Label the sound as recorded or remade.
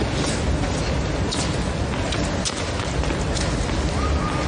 recorded